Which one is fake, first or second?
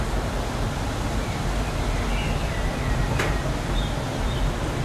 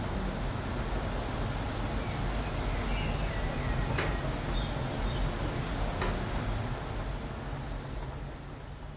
first